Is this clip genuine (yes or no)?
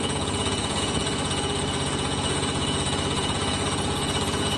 no